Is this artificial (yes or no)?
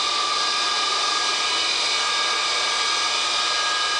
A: no